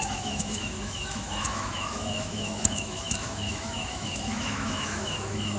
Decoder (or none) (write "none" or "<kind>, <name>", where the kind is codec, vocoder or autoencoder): autoencoder, DAC-VAE